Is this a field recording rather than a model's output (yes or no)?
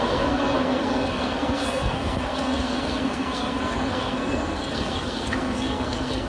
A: no